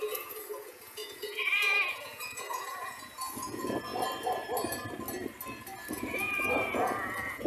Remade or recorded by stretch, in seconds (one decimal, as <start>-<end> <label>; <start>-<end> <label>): 0.0-3.9 remade; 3.9-5.9 recorded; 5.9-7.5 remade